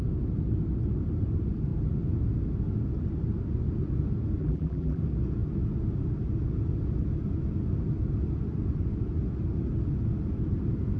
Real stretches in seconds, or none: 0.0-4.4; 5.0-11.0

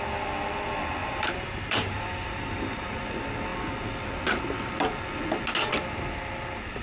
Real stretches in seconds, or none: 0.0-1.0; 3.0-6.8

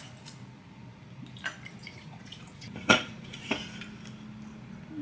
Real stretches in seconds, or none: 0.0-1.8; 3.5-5.0

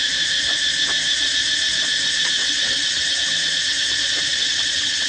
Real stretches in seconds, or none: 0.0-2.4; 3.2-4.3

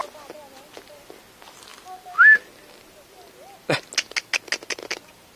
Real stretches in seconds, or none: 0.0-5.4